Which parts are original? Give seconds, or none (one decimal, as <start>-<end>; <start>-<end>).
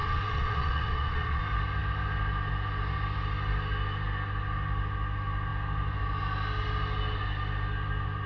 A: 1.4-8.3